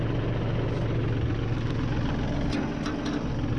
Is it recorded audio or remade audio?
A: recorded